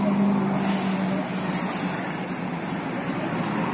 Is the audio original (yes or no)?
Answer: yes